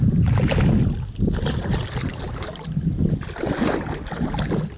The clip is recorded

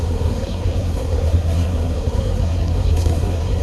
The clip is remade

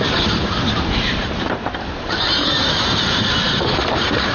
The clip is remade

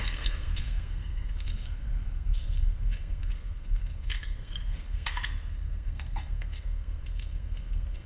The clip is remade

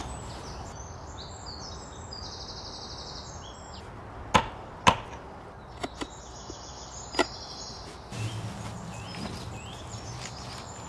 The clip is recorded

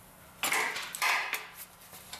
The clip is recorded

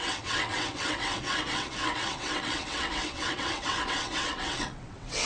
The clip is remade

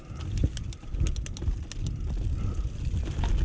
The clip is recorded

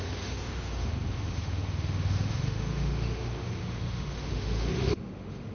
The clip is remade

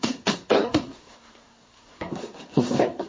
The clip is remade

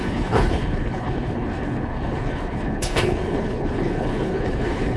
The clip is remade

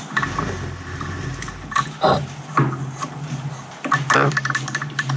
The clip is recorded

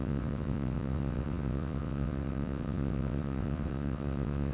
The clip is remade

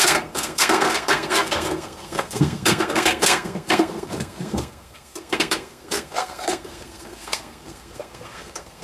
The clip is remade